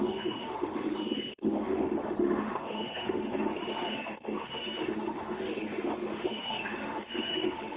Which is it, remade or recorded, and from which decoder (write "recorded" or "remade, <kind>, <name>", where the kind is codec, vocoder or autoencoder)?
remade, autoencoder, DAC-VAE